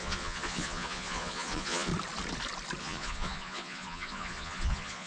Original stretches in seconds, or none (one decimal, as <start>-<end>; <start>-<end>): 1.9-2.8

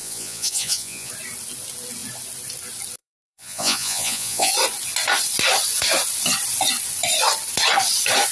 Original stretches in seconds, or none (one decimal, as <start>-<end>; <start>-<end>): 1.1-3.0; 4.5-8.3